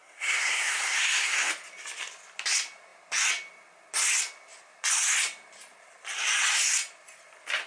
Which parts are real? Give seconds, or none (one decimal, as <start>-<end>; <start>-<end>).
1.5-7.7